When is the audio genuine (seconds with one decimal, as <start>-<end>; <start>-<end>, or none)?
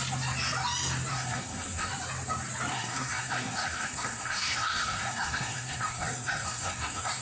0.0-1.1; 1.9-2.7